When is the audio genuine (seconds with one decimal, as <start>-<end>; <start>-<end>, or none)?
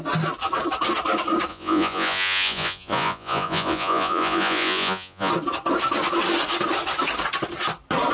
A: 0.0-1.5; 5.3-8.1